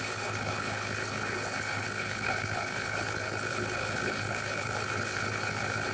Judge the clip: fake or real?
fake